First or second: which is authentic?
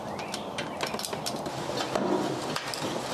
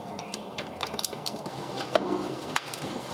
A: first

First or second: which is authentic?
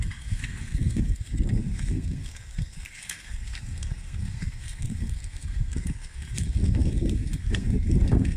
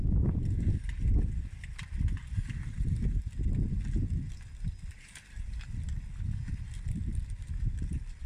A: second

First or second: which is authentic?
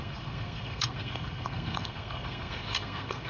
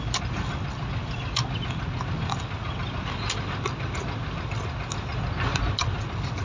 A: second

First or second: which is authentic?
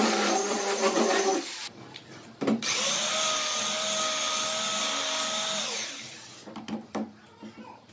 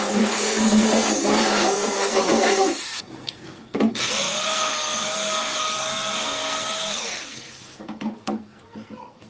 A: first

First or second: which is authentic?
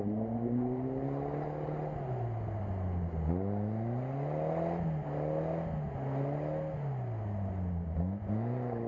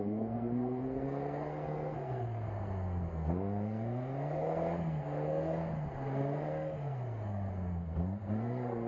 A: first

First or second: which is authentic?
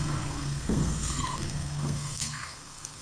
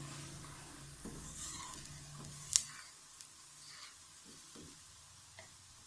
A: second